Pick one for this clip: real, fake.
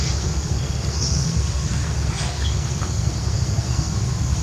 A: fake